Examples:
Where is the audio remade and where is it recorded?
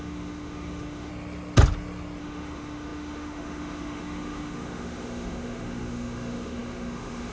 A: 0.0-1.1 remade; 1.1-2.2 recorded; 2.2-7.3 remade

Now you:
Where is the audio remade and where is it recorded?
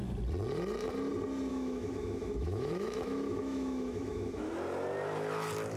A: 0.0-1.5 recorded; 1.5-4.5 remade; 4.5-5.8 recorded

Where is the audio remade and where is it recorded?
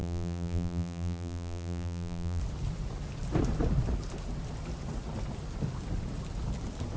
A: 0.0-2.4 remade; 2.4-7.0 recorded